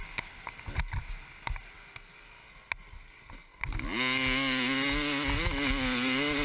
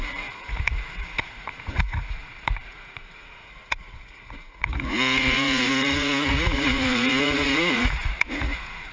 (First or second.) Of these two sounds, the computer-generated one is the second